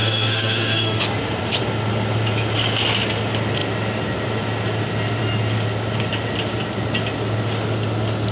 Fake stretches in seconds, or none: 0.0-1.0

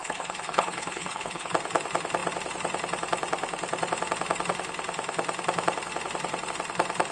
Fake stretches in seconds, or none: 0.0-1.5

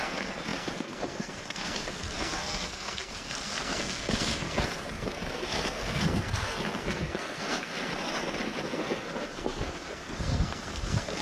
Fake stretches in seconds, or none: 0.0-7.9; 8.6-11.2

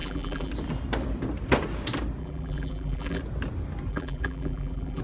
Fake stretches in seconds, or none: 0.0-0.5; 2.2-3.2; 3.9-5.0

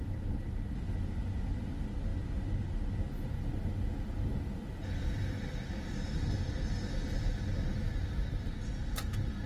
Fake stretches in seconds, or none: none

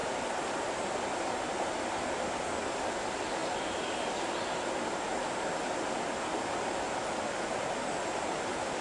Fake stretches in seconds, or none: none

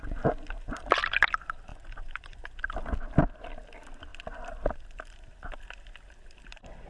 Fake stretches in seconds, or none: 1.7-2.6